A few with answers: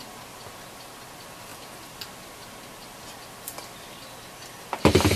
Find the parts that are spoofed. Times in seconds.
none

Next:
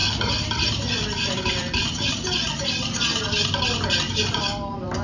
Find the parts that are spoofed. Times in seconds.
0.0-2.1

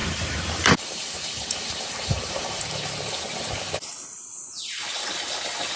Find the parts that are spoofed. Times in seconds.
0.0-2.6

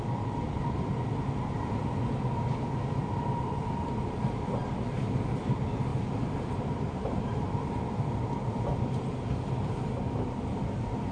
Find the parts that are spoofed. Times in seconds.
5.9-7.7

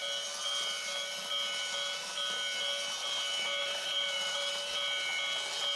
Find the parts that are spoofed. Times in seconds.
3.6-4.5

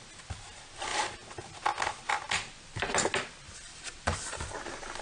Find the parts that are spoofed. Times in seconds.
3.7-4.3

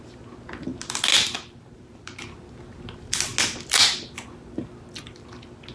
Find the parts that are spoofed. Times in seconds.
1.1-2.2

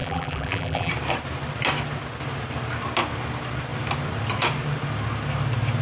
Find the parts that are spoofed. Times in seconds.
0.0-0.9